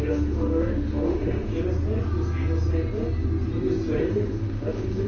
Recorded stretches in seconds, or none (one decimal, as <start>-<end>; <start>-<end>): 1.5-4.0